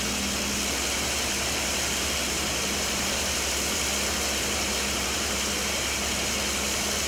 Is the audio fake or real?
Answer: fake